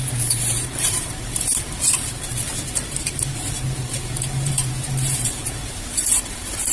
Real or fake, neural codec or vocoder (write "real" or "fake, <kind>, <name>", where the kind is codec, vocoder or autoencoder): fake, vocoder, BigVGAN v2